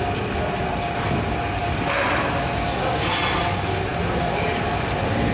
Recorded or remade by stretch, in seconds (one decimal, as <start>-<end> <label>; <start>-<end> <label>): 0.0-5.3 recorded